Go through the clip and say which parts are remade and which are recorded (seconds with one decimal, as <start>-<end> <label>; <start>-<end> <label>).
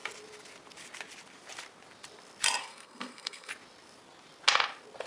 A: 0.0-2.6 recorded; 2.6-3.5 remade; 3.5-5.1 recorded